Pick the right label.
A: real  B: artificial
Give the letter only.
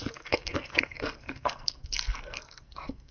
B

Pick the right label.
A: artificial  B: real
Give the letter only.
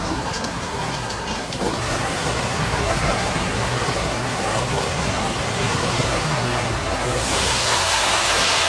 A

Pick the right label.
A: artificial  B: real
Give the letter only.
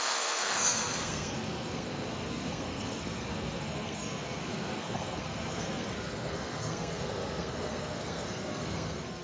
A